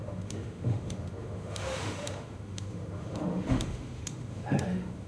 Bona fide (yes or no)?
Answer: no